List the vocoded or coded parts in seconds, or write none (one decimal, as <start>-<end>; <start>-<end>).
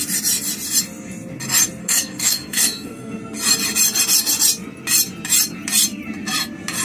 1.8-3.2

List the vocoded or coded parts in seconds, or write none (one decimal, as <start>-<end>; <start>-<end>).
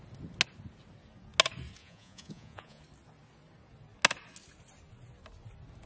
1.8-2.8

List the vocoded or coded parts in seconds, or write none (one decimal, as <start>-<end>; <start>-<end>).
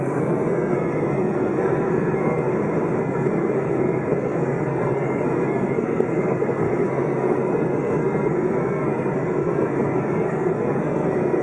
0.0-2.5; 3.0-11.4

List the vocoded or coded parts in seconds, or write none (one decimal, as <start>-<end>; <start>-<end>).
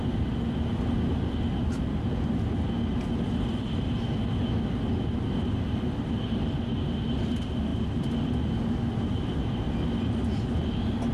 none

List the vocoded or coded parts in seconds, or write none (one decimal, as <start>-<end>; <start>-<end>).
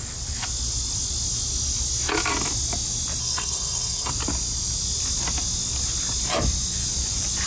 3.2-4.1